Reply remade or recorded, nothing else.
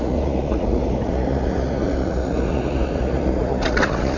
remade